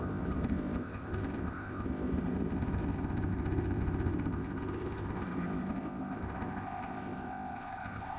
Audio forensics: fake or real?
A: fake